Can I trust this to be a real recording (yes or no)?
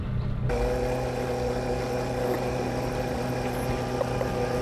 yes